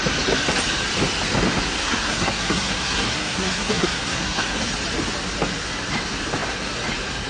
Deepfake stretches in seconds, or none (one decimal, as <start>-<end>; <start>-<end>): 1.8-4.7